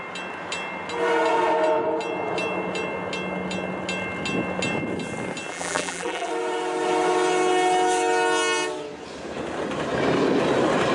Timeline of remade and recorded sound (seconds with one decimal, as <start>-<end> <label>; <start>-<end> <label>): 0.0-5.5 recorded; 5.5-6.3 remade; 6.3-10.9 recorded